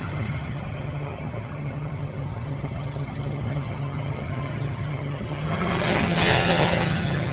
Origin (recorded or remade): remade